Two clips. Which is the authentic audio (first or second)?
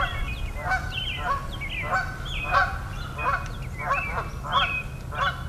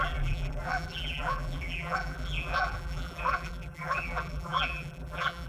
first